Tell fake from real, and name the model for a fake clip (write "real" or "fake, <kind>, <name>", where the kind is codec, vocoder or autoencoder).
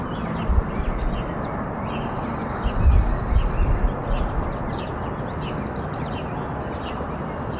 real